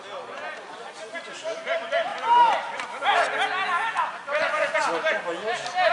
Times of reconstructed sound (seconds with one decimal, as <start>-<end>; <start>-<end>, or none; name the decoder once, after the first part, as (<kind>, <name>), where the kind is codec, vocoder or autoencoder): none